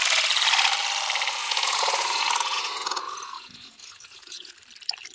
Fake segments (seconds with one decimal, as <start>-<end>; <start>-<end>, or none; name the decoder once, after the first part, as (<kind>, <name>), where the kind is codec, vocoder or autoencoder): 1.4-4.5 (vocoder, Vocos)